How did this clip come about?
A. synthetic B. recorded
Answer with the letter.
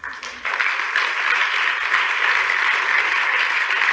B